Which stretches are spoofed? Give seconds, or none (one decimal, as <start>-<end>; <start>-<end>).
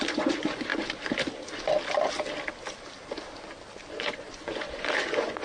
0.0-0.7; 3.9-5.4